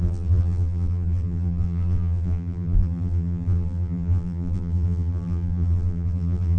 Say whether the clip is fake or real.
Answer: fake